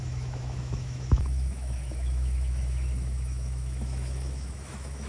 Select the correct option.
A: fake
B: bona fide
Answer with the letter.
A